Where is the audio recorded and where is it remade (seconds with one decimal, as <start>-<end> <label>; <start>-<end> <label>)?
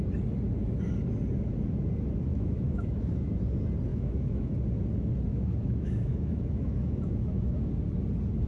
0.0-2.3 recorded; 2.3-3.3 remade; 3.3-3.9 recorded; 3.9-4.5 remade; 4.5-5.3 recorded; 5.3-7.7 remade; 7.7-8.5 recorded